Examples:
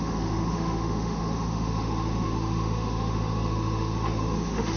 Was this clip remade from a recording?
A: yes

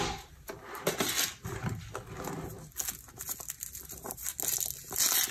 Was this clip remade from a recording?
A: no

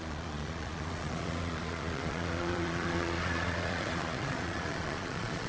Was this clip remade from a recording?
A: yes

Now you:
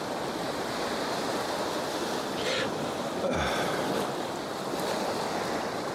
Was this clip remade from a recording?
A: no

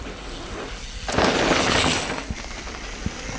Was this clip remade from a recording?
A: no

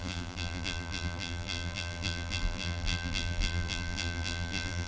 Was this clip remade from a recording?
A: yes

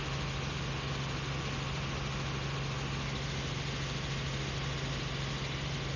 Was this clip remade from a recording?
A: no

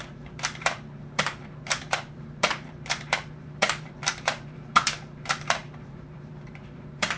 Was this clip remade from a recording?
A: yes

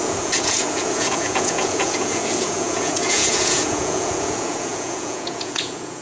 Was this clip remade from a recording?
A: yes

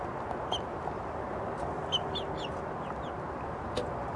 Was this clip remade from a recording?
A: no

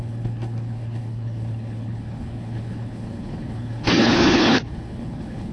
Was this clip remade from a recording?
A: yes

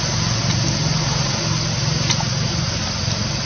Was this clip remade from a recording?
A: no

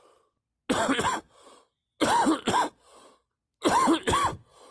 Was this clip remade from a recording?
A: no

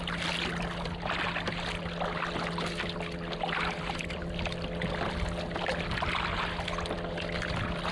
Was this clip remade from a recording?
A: no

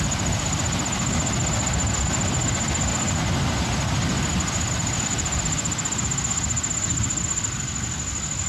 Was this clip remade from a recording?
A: no